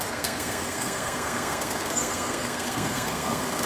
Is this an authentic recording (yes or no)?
no